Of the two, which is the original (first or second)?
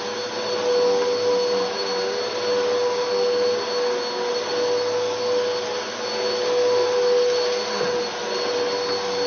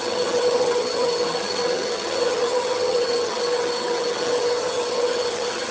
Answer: first